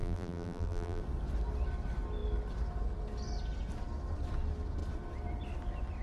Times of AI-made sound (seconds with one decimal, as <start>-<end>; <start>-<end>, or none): 0.0-1.0